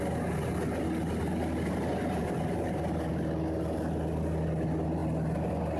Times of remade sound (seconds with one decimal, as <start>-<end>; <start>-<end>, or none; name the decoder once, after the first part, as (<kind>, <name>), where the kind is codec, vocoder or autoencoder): 2.2-3.1 (vocoder, BigVGAN v2)